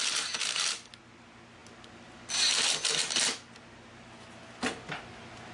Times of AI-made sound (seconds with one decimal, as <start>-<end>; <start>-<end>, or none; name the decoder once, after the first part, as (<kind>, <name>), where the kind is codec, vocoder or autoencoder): none

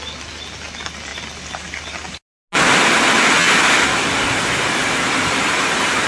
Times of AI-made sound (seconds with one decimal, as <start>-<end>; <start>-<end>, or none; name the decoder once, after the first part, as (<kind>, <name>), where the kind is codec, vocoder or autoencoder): none

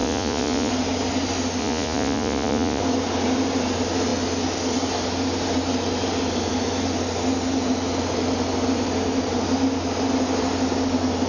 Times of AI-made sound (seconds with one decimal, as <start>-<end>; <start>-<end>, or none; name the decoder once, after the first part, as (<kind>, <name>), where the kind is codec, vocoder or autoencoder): 0.0-0.7 (vocoder, Vocos); 1.6-2.8